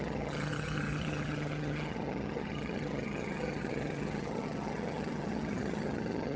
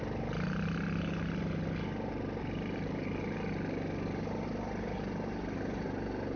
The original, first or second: second